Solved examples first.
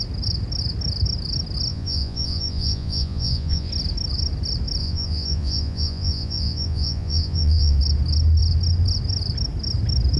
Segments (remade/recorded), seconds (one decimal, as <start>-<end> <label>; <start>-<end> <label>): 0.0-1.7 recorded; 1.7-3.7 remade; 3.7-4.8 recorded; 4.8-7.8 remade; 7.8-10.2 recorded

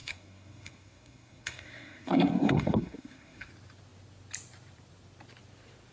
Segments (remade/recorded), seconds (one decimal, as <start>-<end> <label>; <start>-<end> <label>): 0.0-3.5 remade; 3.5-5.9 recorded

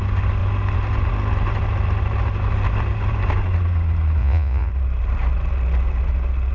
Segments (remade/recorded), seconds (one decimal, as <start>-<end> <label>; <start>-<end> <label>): 0.0-4.2 recorded; 4.2-4.7 remade; 4.7-6.5 recorded

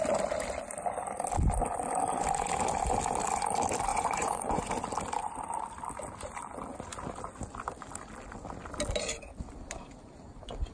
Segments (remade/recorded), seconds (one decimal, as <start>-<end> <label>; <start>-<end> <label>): 0.0-3.9 recorded; 3.9-4.7 remade; 4.7-10.7 recorded

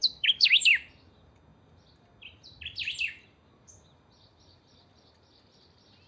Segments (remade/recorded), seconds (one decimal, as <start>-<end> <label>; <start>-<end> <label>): 0.0-0.7 remade; 0.7-6.1 recorded

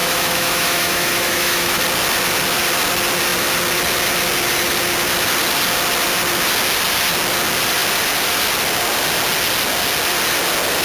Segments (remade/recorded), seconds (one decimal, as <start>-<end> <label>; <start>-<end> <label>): 0.0-1.8 remade; 1.8-10.8 recorded

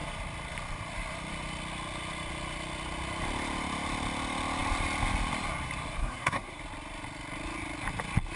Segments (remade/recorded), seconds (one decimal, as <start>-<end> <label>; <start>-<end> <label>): 0.0-6.0 recorded; 6.0-6.6 remade; 6.6-8.4 recorded

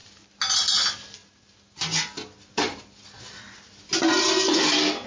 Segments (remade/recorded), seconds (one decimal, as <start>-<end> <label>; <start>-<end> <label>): 0.0-5.1 recorded